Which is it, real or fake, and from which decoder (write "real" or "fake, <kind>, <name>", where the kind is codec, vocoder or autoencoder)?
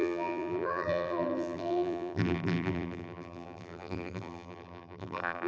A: fake, vocoder, BigVGAN v2